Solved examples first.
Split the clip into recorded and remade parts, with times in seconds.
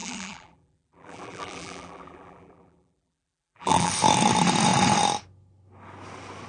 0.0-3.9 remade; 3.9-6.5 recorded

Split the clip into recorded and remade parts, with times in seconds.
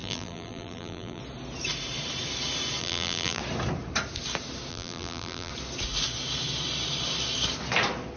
0.0-1.2 remade; 1.2-2.8 recorded; 2.8-3.4 remade; 3.4-4.7 recorded; 4.7-5.5 remade; 5.5-8.2 recorded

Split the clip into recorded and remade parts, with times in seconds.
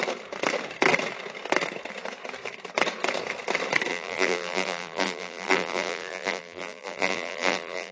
0.0-3.9 recorded; 3.9-7.9 remade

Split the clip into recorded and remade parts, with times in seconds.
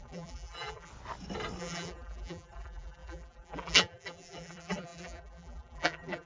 0.0-0.9 remade; 0.9-1.6 recorded; 1.6-6.3 remade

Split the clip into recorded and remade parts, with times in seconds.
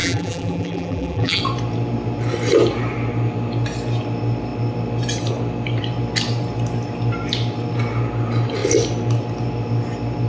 0.0-1.4 remade; 1.4-10.3 recorded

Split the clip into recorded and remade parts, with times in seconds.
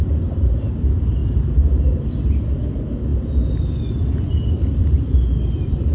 0.0-4.8 recorded; 4.8-5.9 remade